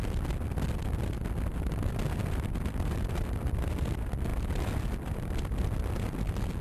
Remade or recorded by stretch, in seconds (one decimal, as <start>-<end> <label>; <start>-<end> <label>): 0.0-6.6 recorded